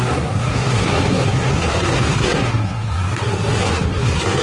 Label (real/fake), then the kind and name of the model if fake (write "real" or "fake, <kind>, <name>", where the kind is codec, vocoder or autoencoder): fake, codec, SNAC